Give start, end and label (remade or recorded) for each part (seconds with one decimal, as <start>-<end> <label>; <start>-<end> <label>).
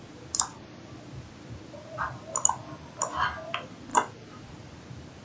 0.0-5.2 recorded